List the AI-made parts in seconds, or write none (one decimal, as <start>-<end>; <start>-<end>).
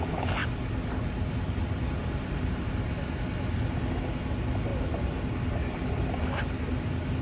0.4-3.2